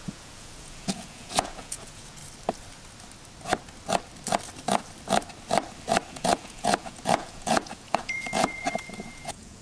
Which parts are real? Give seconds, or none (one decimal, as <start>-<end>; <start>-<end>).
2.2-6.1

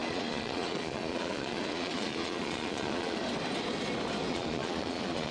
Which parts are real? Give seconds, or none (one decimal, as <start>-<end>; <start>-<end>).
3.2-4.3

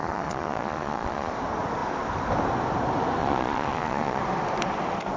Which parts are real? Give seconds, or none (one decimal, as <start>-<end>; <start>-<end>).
1.3-3.2; 4.2-5.2

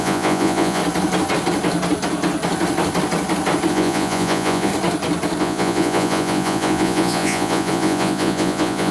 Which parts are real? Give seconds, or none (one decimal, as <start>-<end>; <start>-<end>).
0.8-3.7; 4.7-5.4

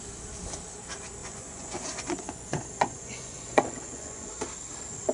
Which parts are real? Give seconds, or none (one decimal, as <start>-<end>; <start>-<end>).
0.0-1.2; 4.3-5.1

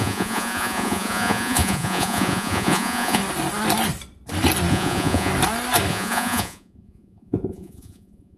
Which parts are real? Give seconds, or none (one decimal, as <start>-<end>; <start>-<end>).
3.2-4.7; 5.3-5.9